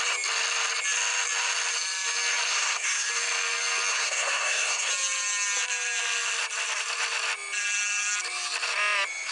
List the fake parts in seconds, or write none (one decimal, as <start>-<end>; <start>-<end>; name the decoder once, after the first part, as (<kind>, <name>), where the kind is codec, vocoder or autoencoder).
2.5-3.1 (codec, SNAC); 3.9-4.9